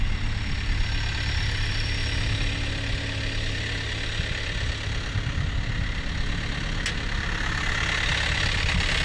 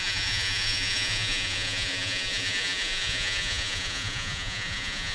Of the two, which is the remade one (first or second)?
second